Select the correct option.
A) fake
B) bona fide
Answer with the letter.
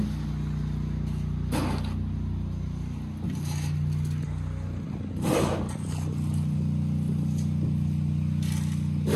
B